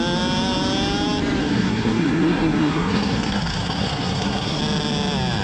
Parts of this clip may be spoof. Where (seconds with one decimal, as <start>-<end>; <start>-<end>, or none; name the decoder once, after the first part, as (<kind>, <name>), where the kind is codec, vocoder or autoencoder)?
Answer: 1.4-4.6 (codec, SNAC)